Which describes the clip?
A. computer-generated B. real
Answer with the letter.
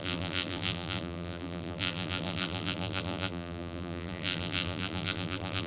A